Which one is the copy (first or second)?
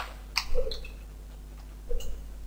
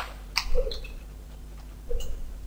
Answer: second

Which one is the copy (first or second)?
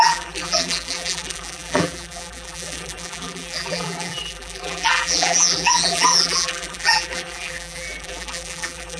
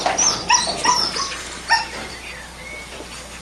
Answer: first